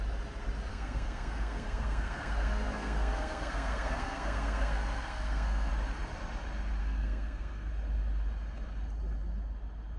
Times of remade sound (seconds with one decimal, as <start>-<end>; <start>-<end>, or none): 0.7-5.7; 6.8-7.7